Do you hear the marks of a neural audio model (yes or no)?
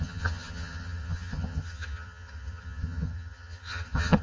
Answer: yes